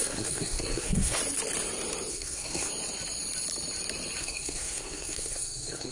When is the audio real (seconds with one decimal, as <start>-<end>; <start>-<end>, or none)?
1.2-2.1; 2.7-4.2